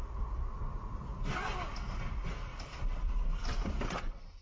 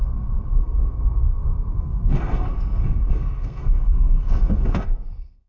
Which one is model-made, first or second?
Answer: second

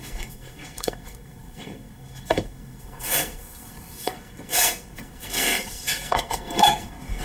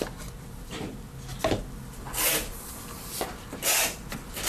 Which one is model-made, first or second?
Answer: first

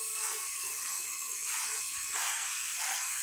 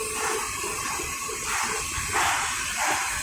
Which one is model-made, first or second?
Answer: first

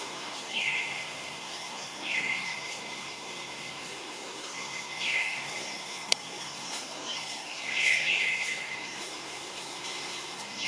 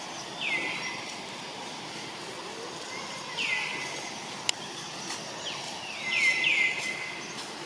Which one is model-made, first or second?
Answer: first